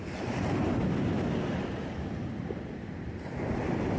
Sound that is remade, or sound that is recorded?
recorded